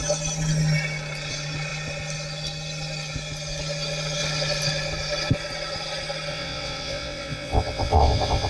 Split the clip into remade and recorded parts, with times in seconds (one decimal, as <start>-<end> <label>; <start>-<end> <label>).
0.0-6.3 recorded; 6.3-8.5 remade